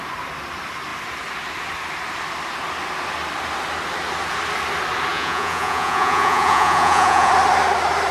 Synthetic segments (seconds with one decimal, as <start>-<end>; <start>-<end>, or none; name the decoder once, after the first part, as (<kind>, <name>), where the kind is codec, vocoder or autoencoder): 5.1-7.3 (vocoder, Vocos)